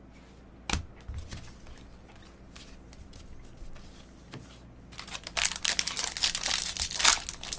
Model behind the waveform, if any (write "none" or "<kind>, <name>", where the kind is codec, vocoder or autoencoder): none